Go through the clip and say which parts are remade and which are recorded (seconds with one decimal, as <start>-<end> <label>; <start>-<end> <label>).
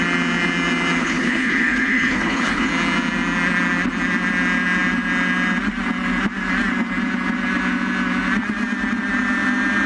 0.0-1.0 recorded; 1.0-2.7 remade; 2.7-9.9 recorded